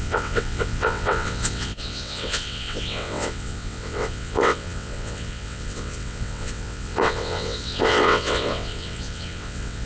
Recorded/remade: remade